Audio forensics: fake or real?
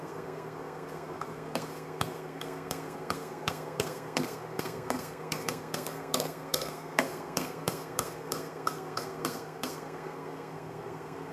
fake